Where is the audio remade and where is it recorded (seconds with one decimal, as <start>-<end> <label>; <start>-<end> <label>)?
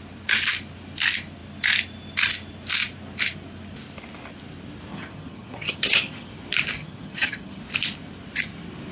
0.0-4.9 recorded; 4.9-6.3 remade; 6.3-6.8 recorded; 6.8-7.6 remade; 7.6-8.9 recorded